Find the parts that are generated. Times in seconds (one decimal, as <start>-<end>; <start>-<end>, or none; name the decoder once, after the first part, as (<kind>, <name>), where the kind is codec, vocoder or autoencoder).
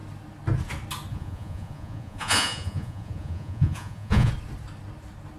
1.1-4.3 (vocoder, Vocos)